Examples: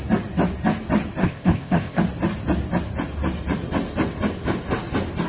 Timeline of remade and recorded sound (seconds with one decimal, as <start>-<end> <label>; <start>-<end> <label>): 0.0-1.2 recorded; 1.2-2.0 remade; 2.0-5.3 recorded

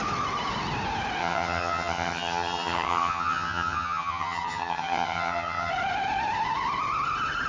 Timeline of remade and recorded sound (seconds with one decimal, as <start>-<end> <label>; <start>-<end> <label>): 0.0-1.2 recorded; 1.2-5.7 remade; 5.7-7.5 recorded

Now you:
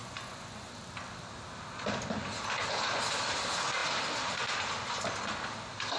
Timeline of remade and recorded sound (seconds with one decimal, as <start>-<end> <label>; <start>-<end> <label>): 0.0-0.7 remade; 0.7-6.0 recorded

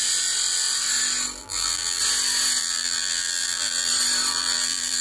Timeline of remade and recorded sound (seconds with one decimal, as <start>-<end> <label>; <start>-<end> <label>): 0.0-1.4 recorded; 1.4-2.0 remade; 2.0-2.6 recorded; 2.6-3.9 remade; 3.9-4.3 recorded; 4.3-5.0 remade